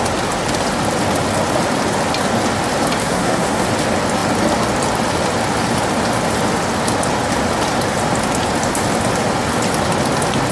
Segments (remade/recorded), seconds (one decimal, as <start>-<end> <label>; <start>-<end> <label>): 0.0-3.0 recorded; 3.0-3.6 remade; 3.6-10.5 recorded